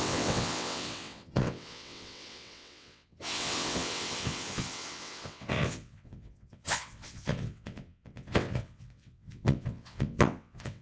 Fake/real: fake